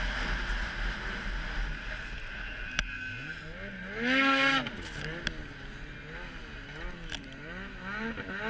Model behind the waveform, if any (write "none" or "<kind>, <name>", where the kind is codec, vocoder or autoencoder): none